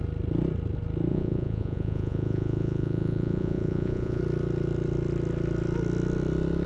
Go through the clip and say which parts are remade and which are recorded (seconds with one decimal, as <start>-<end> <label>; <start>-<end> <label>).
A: 0.0-1.1 recorded; 1.1-4.2 remade; 4.2-6.7 recorded

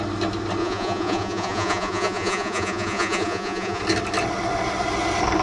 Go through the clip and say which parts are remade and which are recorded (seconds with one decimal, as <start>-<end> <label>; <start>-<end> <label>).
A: 0.0-0.6 recorded; 0.6-3.8 remade; 3.8-5.4 recorded